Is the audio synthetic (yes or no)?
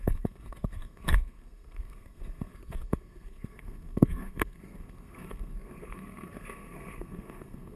yes